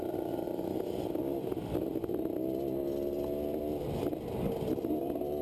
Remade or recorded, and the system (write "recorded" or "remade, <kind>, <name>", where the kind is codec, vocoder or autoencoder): recorded